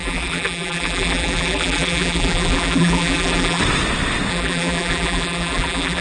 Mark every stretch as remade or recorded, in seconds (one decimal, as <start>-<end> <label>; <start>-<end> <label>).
0.0-3.6 remade; 3.6-4.3 recorded; 4.3-6.0 remade